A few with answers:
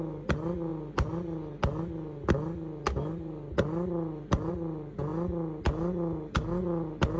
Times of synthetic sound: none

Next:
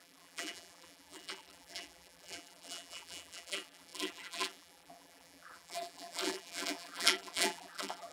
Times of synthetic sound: 0.0-8.1

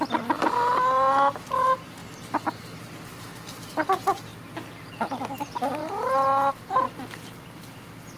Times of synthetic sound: none

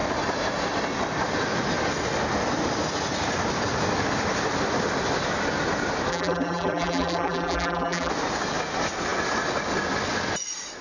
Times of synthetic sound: 6.1-8.1

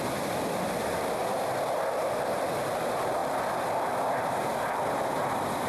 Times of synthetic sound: 0.0-1.2; 1.9-3.2; 4.9-5.7

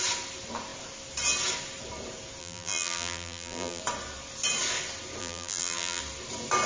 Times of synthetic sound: 2.4-3.8; 5.2-6.0

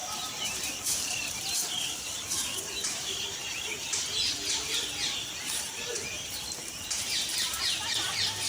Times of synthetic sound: 0.0-3.4; 5.4-7.3

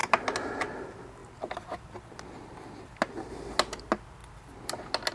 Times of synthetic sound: none